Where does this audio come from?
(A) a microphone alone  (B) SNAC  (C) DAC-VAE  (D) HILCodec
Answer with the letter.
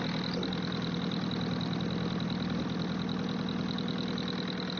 A